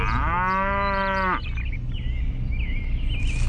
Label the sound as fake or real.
real